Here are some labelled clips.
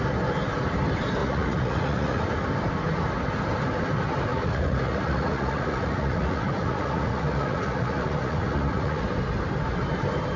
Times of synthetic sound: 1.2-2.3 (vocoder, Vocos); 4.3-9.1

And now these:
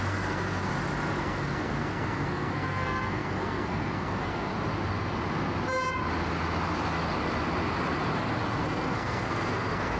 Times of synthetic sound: 0.0-0.7 (codec, SNAC); 1.2-4.5; 8.6-10.0

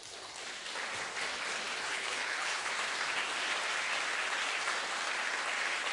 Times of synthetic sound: 1.9-2.7 (codec, HILCodec)

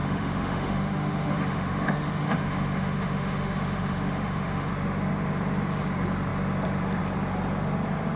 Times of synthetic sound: 0.0-4.7 (autoencoder, DAC-VAE)

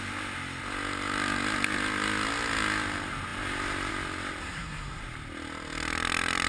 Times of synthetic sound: 4.4-5.0 (codec, SNAC)